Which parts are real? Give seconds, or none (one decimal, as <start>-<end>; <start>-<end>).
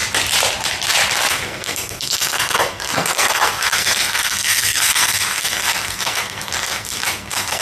0.0-1.3